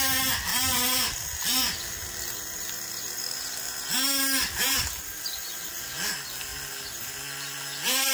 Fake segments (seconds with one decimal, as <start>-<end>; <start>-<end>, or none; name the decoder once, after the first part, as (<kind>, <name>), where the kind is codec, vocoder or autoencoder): none